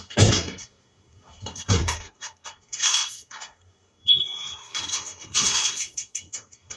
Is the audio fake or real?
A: fake